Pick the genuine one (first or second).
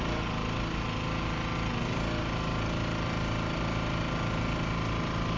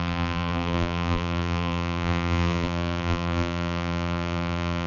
first